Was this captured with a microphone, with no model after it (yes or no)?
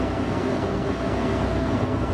no